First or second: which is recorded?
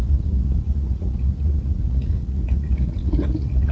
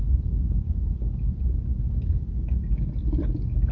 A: second